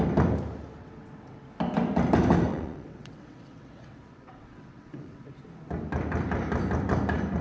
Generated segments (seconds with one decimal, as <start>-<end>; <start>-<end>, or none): 0.8-1.4; 2.5-5.3